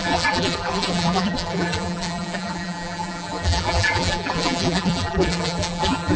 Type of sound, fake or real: fake